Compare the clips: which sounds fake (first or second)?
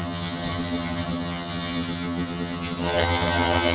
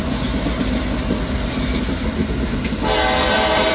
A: first